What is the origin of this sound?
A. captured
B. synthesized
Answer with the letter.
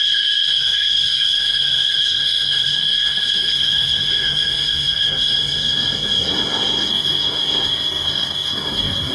B